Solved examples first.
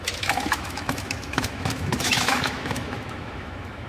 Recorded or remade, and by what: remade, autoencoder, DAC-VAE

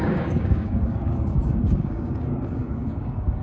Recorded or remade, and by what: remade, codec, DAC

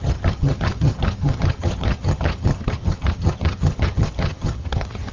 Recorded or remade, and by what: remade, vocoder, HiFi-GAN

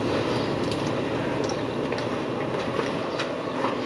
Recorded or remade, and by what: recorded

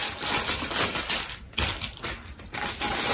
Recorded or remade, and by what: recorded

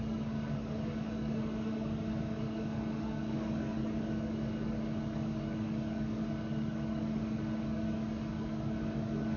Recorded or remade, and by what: remade, codec, DAC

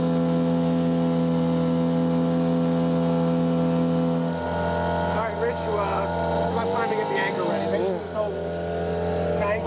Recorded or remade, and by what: recorded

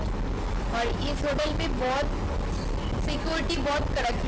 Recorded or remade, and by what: recorded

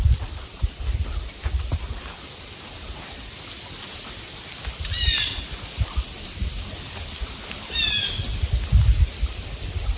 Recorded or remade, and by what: recorded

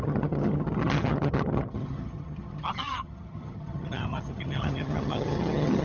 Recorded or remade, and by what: remade, vocoder, HiFi-GAN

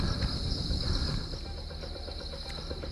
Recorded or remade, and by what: recorded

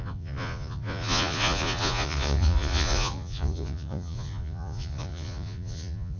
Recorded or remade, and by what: remade, vocoder, Vocos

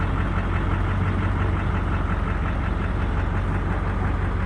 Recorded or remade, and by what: recorded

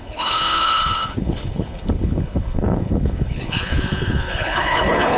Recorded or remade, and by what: remade, codec, HILCodec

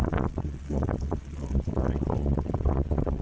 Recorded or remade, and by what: remade, vocoder, Vocos